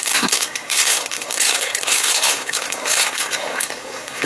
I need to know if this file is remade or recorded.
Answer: remade